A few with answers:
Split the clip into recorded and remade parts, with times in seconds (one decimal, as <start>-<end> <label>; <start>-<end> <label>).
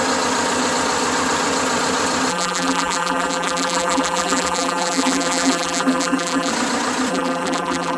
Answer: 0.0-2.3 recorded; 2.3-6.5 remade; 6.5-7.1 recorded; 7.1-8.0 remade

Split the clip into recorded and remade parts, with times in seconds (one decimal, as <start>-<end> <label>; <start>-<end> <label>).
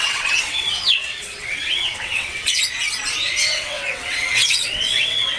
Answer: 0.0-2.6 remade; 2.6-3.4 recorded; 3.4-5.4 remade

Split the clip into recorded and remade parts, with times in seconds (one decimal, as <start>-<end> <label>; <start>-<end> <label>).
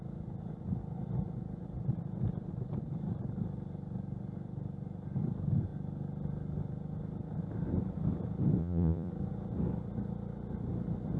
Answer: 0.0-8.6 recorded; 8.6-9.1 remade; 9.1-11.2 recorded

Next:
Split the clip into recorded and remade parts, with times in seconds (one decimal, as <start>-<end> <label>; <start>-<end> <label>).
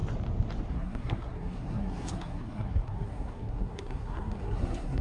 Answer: 0.0-0.7 recorded; 0.7-5.0 remade